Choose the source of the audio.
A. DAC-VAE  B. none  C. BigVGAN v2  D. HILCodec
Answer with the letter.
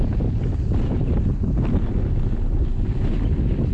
B